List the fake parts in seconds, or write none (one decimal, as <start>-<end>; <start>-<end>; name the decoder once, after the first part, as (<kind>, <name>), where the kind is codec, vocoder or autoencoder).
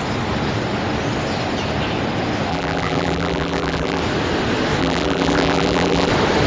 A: 2.5-4.0 (vocoder, BigVGAN v2); 4.8-6.1